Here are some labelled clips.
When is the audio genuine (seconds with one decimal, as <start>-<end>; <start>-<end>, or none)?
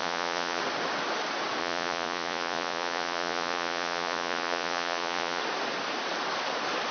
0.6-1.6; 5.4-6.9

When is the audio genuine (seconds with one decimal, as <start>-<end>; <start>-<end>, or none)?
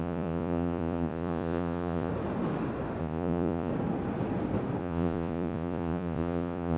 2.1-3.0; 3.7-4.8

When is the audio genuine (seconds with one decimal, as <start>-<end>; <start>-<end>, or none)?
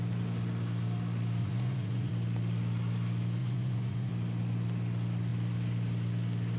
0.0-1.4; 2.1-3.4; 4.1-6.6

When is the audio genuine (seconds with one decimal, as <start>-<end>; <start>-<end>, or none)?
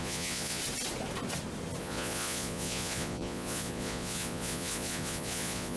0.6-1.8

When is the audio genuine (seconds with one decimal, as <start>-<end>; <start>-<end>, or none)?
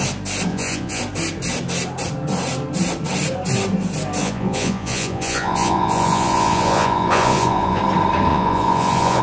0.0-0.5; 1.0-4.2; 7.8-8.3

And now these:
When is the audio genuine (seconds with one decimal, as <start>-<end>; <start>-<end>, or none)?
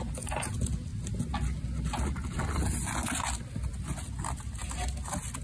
0.0-5.4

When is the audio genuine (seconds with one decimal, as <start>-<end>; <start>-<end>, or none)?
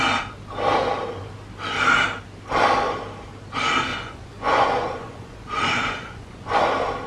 0.0-3.9; 6.6-7.1